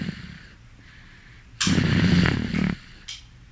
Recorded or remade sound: recorded